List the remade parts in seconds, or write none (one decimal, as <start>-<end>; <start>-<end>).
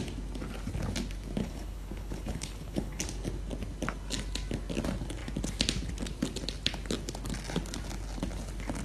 1.4-3.0